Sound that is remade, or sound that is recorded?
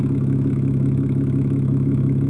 remade